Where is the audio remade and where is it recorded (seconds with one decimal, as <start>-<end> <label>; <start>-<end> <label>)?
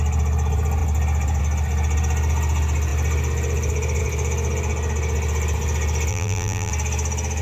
0.0-6.1 recorded; 6.1-6.7 remade; 6.7-7.4 recorded